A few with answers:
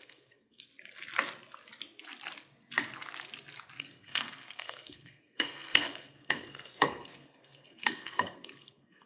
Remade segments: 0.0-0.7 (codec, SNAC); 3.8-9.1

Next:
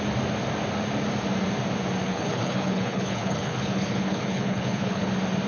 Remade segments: 2.0-5.1 (codec, HILCodec)

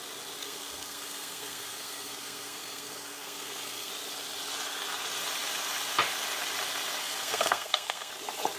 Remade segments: 0.4-3.9 (codec, SNAC); 7.0-8.1

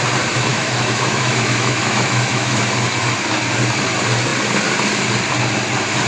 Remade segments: 0.5-2.6 (autoencoder, DAC-VAE)

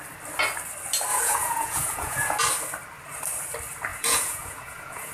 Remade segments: 1.1-2.4 (vocoder, Vocos); 3.9-5.1

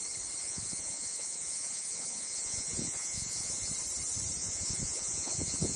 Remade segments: 0.4-3.7 (vocoder, Vocos); 4.4-5.8